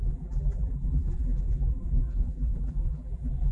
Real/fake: fake